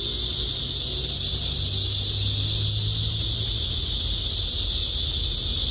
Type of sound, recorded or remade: recorded